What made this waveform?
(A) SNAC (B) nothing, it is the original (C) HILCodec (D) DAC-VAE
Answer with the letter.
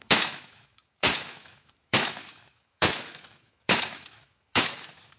D